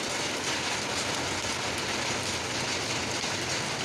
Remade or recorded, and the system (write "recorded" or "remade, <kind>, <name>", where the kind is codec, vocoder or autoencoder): recorded